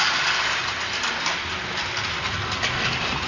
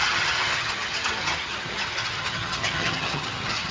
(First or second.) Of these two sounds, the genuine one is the first